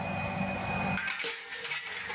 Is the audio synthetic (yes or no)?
no